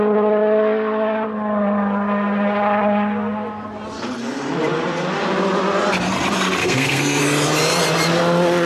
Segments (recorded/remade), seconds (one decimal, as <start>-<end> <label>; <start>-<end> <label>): 0.0-6.6 recorded; 6.6-7.2 remade; 7.2-8.7 recorded